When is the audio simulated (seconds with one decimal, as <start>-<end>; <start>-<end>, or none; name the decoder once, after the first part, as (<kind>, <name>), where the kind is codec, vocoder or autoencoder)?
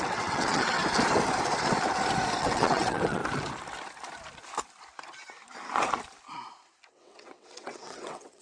0.0-0.8 (vocoder, WaveNeXt); 2.4-3.2; 6.9-8.4